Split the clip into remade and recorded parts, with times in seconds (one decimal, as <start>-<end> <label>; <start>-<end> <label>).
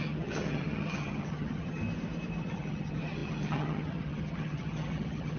0.0-1.8 remade; 1.8-2.4 recorded; 2.4-5.4 remade